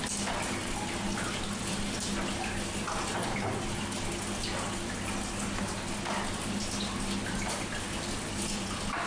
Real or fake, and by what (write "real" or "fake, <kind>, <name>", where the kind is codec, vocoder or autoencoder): real